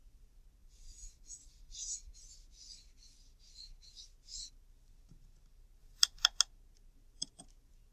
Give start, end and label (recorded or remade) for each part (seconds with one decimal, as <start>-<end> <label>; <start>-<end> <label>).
0.0-0.6 recorded; 0.6-2.1 remade; 2.1-5.8 recorded; 5.8-6.4 remade; 6.4-7.9 recorded